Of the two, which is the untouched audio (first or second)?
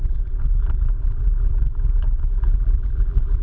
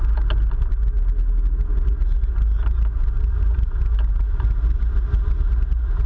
second